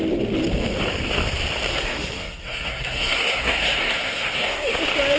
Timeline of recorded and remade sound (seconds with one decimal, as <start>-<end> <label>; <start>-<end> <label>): 0.0-1.7 recorded; 1.7-4.8 remade; 4.8-5.2 recorded